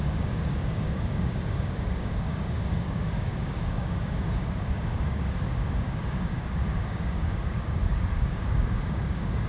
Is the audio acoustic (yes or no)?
no